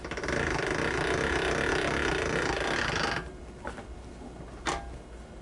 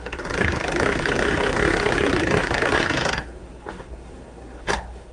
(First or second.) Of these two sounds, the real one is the first